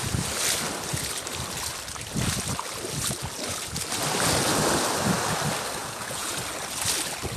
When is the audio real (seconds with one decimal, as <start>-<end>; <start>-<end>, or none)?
0.0-5.8; 6.4-7.4